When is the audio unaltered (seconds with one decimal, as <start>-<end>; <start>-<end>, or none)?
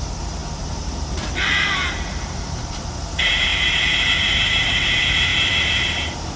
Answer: 5.3-5.8